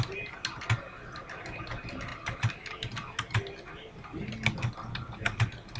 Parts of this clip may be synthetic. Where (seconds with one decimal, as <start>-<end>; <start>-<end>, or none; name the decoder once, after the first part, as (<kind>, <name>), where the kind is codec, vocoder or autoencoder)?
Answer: none